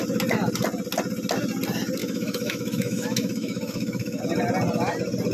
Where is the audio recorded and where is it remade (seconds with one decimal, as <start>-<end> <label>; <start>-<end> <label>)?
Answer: 0.0-2.0 recorded; 2.0-4.2 remade; 4.2-5.3 recorded